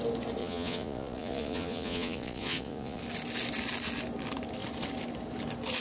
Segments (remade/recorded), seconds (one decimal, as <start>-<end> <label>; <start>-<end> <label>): 0.0-0.4 recorded; 0.4-3.0 remade; 3.0-5.8 recorded